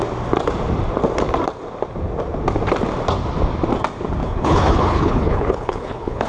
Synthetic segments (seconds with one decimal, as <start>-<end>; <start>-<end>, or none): 4.2-6.3